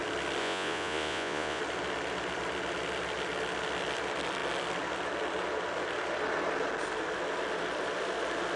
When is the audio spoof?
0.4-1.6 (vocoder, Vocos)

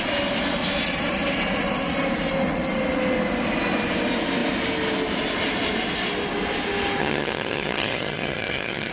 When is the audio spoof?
7.0-8.9 (vocoder, HiFi-GAN)